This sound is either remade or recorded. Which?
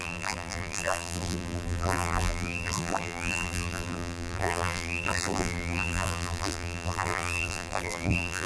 remade